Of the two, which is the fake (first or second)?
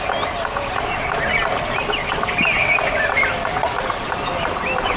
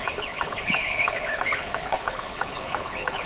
second